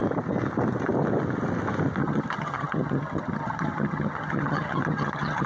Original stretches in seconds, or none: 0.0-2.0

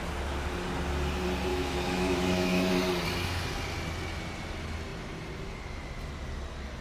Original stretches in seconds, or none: 0.0-1.5; 2.7-6.8